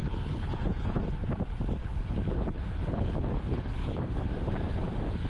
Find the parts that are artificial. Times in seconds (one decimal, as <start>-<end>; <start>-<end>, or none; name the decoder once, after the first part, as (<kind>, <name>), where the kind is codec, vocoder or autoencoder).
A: 0.0-1.0 (codec, HILCodec); 1.8-4.3